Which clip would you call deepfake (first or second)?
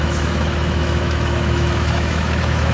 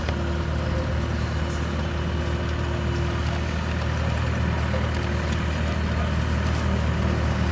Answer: first